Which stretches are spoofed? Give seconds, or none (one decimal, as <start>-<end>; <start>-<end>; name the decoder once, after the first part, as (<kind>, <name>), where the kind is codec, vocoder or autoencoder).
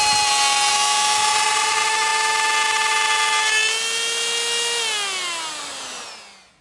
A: 0.7-1.3 (autoencoder, DAC-VAE)